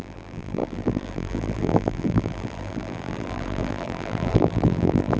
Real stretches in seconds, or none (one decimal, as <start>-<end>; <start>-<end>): none